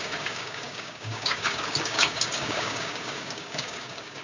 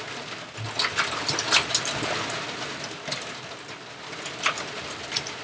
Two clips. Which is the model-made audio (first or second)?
first